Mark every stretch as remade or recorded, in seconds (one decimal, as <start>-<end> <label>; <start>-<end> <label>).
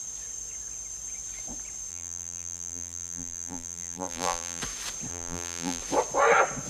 0.0-1.9 recorded; 1.9-4.6 remade; 4.6-5.1 recorded; 5.1-5.8 remade; 5.8-6.7 recorded